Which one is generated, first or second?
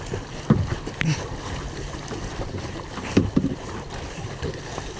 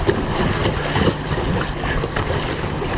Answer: first